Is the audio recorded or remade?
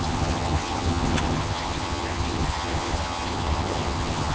remade